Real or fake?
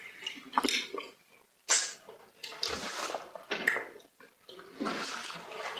real